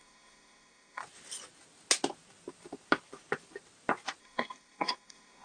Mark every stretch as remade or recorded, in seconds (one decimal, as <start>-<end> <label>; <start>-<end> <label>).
0.0-1.0 remade; 1.0-4.2 recorded; 4.2-5.4 remade